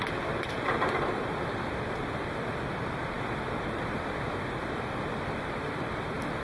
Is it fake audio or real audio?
fake